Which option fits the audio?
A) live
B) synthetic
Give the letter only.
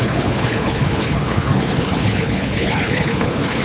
B